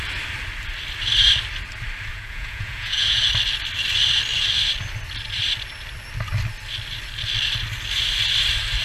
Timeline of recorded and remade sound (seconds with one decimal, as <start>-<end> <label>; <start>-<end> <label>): 0.0-2.1 recorded; 2.1-3.2 remade; 3.2-8.8 recorded

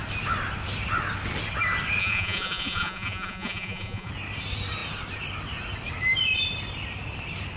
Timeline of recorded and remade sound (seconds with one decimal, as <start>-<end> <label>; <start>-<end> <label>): 0.0-2.0 recorded; 2.0-4.1 remade; 4.1-7.6 recorded

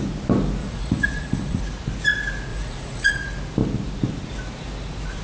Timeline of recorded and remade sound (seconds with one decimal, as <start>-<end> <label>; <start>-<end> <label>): 0.0-0.6 recorded; 0.6-1.6 remade; 1.6-2.5 recorded; 2.5-3.1 remade; 3.1-5.2 recorded

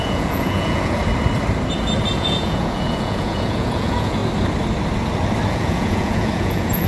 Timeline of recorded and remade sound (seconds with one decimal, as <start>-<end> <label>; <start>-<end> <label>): 0.0-1.0 remade; 1.0-2.1 recorded; 2.1-4.2 remade; 4.2-5.5 recorded; 5.5-6.9 remade

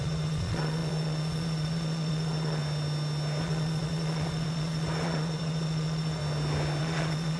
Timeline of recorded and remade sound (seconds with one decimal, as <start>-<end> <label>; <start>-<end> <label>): 0.0-2.6 remade; 2.6-3.4 recorded; 3.4-6.2 remade; 6.2-6.8 recorded; 6.8-7.4 remade